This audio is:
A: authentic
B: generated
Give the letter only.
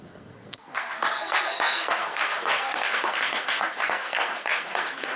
B